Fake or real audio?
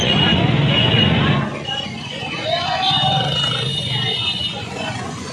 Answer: fake